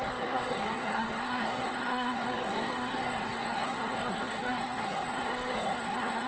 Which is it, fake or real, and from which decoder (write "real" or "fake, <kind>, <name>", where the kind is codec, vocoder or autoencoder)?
fake, codec, SNAC